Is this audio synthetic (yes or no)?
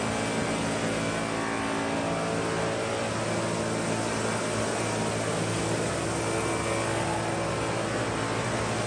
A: no